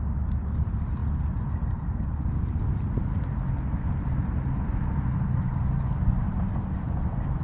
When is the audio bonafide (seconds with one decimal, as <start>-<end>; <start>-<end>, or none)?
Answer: 0.0-7.4